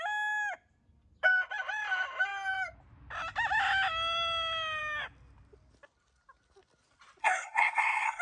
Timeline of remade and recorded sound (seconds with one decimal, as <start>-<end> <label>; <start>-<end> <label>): 0.0-7.2 recorded; 7.2-8.2 remade